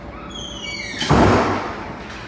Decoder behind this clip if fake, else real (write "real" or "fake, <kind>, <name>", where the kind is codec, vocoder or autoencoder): real